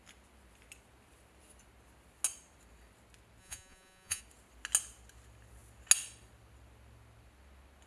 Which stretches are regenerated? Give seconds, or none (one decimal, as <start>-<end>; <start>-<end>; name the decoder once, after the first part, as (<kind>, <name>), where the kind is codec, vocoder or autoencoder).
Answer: 3.4-4.2 (vocoder, Vocos)